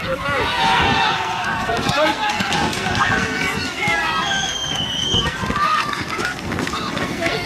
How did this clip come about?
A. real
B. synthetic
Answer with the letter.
B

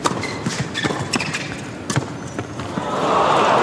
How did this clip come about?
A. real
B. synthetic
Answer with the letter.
A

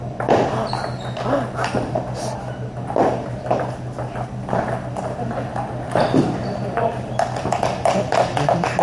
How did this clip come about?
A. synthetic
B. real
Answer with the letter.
B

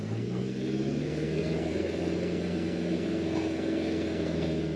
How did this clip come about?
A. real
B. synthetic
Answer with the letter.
B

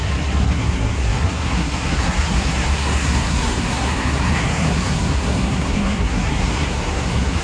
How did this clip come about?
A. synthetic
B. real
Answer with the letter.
A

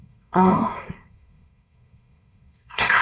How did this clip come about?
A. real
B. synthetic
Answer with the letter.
B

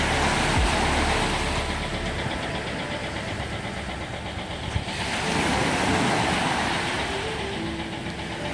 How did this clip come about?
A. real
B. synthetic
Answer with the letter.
A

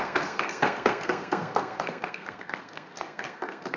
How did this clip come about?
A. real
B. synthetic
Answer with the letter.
B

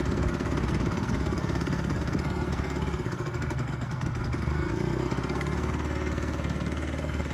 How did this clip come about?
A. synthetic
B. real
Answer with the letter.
A